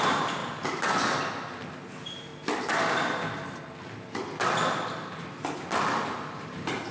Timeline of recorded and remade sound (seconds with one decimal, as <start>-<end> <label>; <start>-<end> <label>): 0.0-0.4 remade; 0.4-1.7 recorded; 1.7-2.3 remade; 2.3-6.4 recorded; 6.4-6.9 remade